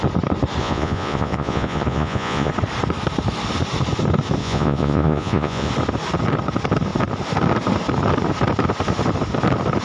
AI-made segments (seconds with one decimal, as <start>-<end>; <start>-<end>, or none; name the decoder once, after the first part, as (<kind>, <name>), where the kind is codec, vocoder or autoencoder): 0.6-2.5 (vocoder, Vocos); 4.4-5.7